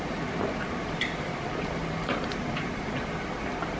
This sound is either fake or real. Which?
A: real